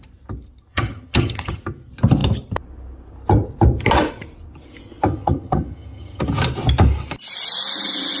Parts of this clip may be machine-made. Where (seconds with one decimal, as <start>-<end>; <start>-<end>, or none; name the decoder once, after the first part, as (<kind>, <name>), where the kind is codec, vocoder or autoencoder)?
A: 0.7-1.6 (vocoder, HiFi-GAN); 5.1-6.2